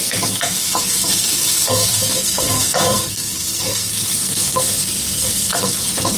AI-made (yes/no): yes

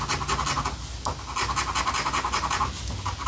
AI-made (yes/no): no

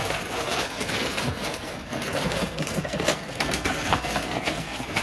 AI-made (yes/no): yes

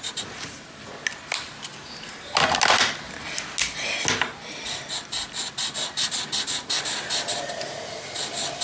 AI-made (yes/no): no